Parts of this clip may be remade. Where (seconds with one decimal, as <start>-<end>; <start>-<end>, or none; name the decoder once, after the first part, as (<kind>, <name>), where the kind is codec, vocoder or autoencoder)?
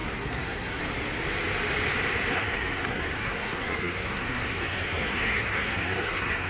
0.0-0.8 (codec, SNAC); 2.3-6.5